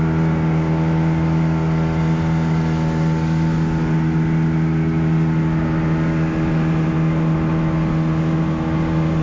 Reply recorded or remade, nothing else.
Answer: recorded